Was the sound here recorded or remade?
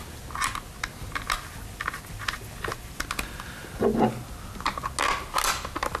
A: recorded